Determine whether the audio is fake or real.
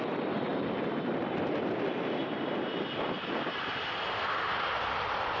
real